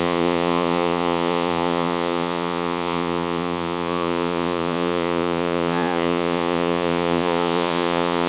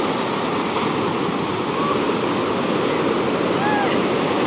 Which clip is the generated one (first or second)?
first